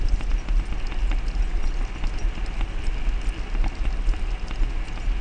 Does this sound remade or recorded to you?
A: recorded